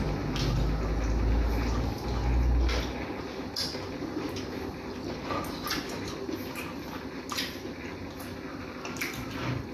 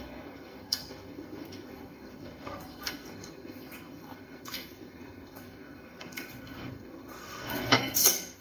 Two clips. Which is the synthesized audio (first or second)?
second